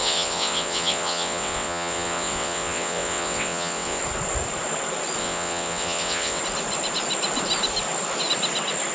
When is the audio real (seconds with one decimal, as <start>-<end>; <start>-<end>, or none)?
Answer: 4.0-5.2; 6.4-8.9